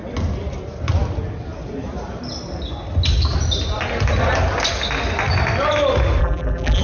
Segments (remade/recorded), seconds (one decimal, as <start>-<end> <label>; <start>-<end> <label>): 0.0-6.2 recorded; 6.2-6.8 remade